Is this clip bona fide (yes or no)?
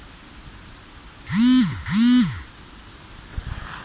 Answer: yes